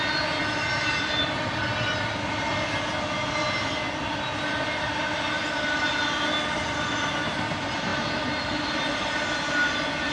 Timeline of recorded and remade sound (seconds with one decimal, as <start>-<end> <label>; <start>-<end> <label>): 0.0-7.9 recorded; 7.9-8.7 remade; 8.7-10.1 recorded